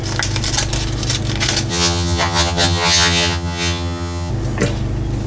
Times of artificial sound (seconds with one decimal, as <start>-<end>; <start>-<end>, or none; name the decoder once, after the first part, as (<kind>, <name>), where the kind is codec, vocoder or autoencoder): 1.7-4.3 (vocoder, HiFi-GAN)